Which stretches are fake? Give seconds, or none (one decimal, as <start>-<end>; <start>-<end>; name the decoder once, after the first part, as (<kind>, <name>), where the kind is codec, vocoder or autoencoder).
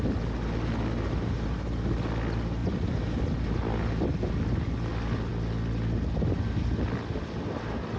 none